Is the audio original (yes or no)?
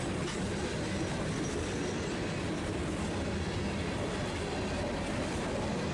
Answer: yes